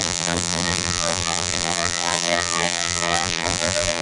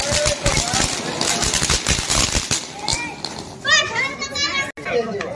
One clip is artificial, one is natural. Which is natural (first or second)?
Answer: second